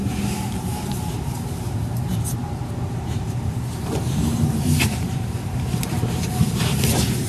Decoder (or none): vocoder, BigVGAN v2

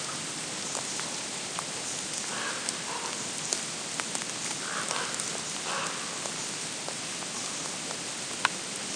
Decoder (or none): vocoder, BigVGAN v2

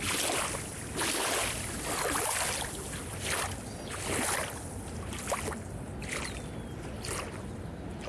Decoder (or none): none